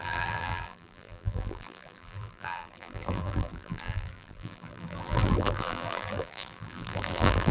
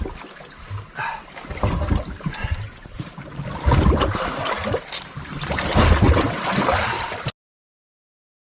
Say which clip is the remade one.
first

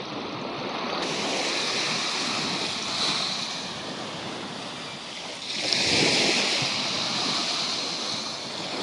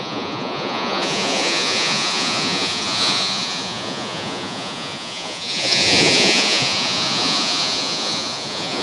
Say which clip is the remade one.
second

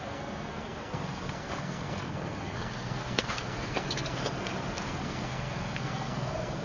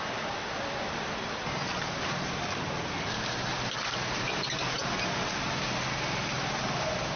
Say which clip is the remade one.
first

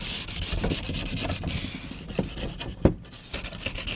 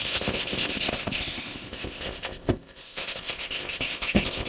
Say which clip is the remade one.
second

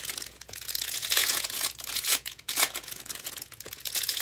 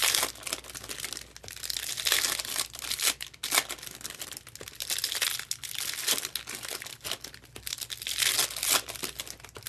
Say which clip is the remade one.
first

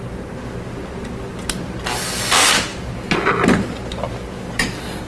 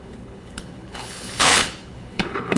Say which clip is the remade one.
second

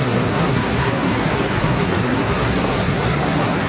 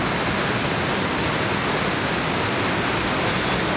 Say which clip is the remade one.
first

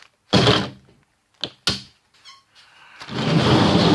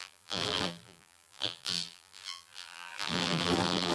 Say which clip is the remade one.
second